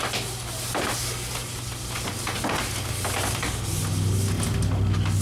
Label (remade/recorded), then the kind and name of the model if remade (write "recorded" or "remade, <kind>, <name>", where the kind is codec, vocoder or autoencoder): recorded